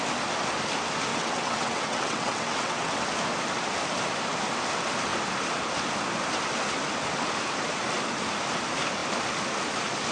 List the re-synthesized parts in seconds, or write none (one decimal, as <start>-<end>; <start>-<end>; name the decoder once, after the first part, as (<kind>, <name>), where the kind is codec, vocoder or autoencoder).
1.1-3.0 (vocoder, WaveNeXt)